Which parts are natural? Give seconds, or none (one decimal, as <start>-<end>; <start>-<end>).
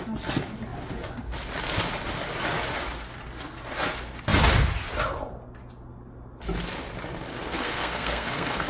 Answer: 0.0-7.3